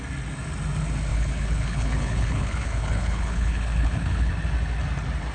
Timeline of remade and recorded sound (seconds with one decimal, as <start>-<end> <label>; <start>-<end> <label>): 0.0-1.1 recorded; 1.1-4.3 remade; 4.3-5.3 recorded